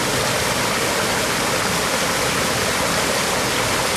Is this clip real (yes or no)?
yes